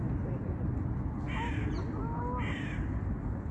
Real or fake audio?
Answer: real